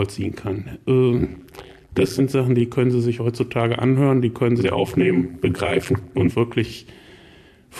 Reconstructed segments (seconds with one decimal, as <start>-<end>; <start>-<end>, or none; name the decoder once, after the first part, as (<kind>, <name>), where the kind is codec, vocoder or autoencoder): 1.3-2.2 (vocoder, BigVGAN v2); 4.6-6.3